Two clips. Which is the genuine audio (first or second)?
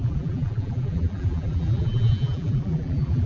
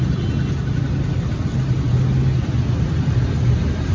second